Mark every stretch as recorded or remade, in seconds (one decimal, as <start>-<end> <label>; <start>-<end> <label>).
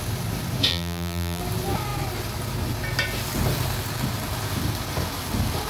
0.0-0.7 recorded; 0.7-1.4 remade; 1.4-5.7 recorded